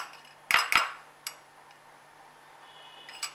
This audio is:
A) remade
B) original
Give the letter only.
B